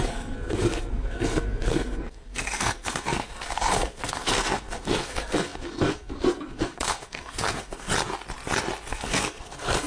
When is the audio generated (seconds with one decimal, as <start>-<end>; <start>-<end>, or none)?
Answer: 0.0-7.9; 8.9-9.9